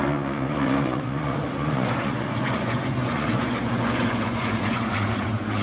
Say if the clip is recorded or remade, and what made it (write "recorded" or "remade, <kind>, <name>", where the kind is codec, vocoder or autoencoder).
remade, vocoder, Vocos